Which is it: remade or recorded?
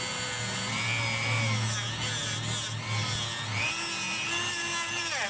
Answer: recorded